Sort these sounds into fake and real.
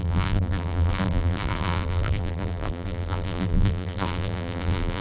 fake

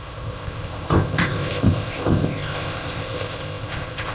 fake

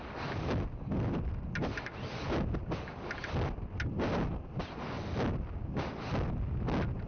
real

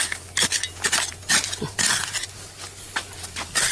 real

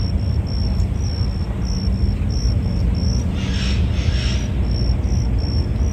real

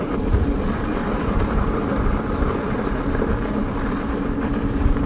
fake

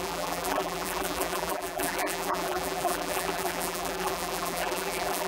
fake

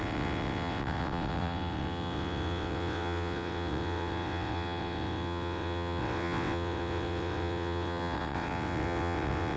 fake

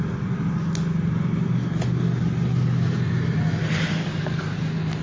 real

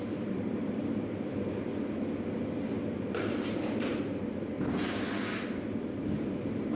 real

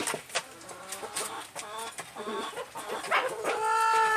real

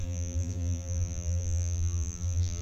fake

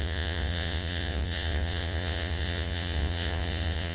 fake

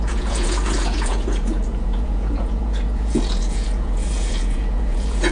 fake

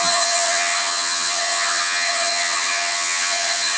fake